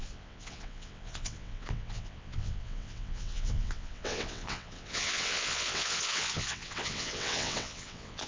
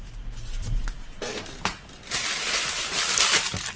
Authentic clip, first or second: second